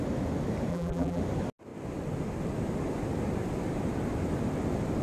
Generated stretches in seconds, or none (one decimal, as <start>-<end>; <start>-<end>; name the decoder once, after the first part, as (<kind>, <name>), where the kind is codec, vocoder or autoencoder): 0.7-1.2 (vocoder, BigVGAN v2)